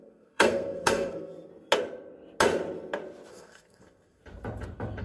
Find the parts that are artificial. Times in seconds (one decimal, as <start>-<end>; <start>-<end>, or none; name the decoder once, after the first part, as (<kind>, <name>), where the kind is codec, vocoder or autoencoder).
0.0-1.5 (codec, SNAC); 3.3-4.2